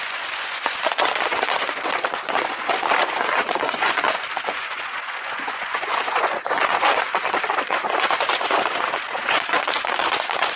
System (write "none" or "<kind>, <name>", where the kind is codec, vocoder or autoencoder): vocoder, Vocos